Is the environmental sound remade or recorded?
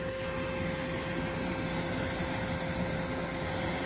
recorded